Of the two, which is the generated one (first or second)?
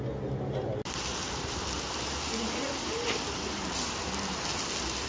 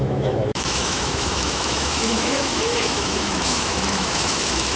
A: second